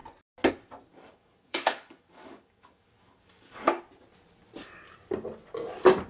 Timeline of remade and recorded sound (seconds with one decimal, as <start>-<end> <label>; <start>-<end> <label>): 0.0-0.9 recorded; 0.9-3.8 remade; 3.8-6.1 recorded